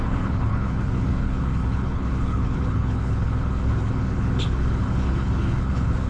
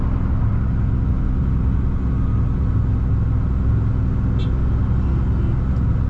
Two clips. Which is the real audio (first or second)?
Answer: second